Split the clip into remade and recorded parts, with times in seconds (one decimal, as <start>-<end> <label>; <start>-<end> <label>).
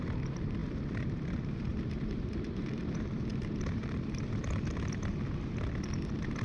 0.0-5.1 remade; 5.1-6.4 recorded